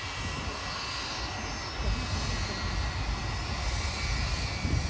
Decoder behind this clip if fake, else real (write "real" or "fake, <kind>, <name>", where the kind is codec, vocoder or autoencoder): real